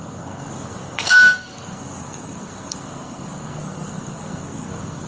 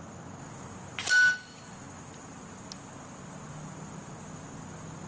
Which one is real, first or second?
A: second